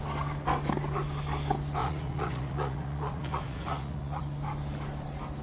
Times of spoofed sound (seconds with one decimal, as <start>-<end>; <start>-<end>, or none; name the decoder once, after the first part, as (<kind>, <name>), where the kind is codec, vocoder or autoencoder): 1.8-4.2 (vocoder, Vocos)